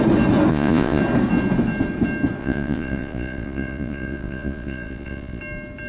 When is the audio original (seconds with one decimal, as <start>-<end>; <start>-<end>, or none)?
0.0-0.5; 1.0-2.4; 5.4-5.9